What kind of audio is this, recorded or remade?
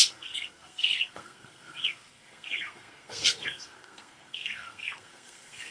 remade